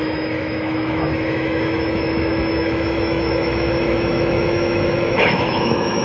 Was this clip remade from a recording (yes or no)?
yes